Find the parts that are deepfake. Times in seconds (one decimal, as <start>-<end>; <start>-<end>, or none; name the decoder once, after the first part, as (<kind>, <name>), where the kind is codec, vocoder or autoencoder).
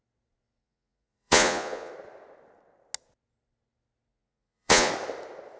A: 0.6-1.9 (vocoder, Vocos); 4.1-4.9